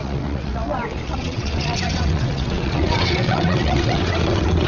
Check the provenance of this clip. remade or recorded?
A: remade